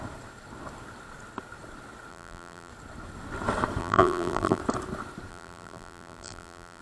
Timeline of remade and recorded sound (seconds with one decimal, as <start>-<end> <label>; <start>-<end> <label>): 0.0-2.1 recorded; 2.1-2.7 remade; 2.7-3.8 recorded; 3.8-4.6 remade; 4.6-5.3 recorded; 5.3-6.8 remade

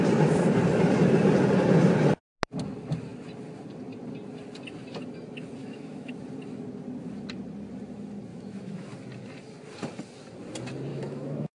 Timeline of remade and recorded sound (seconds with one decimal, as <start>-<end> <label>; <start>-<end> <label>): 0.0-5.6 recorded; 5.6-6.1 remade; 6.1-8.3 recorded; 8.3-8.9 remade; 8.9-10.9 recorded; 10.9-11.6 remade

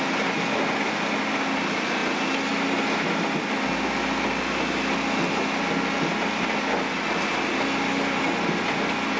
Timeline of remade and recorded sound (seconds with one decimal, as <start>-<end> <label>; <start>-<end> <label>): 0.0-9.2 recorded

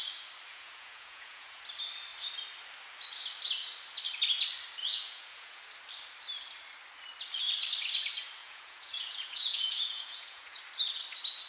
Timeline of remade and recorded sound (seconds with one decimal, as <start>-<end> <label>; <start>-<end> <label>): 0.0-0.5 recorded; 0.5-1.6 remade; 1.6-4.8 recorded; 4.8-5.6 remade; 5.6-8.4 recorded; 8.4-10.6 remade; 10.6-11.5 recorded

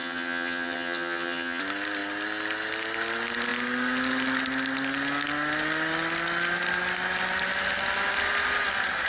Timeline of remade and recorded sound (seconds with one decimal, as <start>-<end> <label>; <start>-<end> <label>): 0.0-1.6 remade; 1.6-9.1 recorded